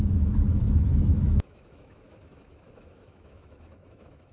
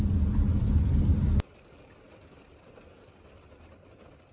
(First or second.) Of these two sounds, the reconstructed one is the first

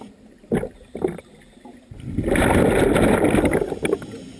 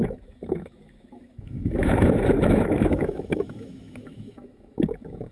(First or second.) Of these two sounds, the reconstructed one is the second